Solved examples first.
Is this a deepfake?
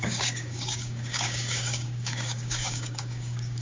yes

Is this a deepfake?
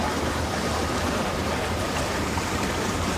yes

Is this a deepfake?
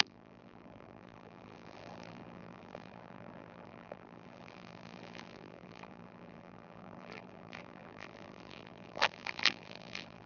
yes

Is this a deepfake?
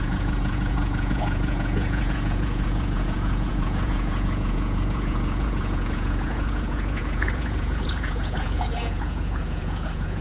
yes